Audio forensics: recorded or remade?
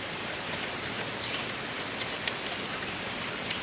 recorded